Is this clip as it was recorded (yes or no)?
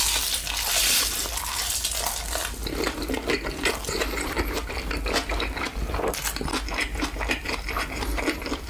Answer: yes